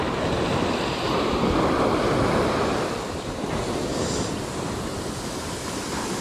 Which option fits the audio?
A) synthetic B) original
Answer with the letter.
B